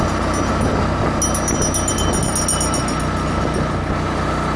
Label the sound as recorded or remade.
recorded